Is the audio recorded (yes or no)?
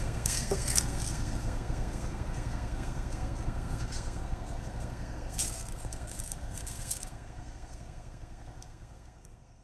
no